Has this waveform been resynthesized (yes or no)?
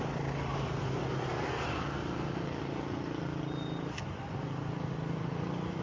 no